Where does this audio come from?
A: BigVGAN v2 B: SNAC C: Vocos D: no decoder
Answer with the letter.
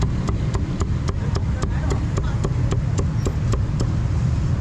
D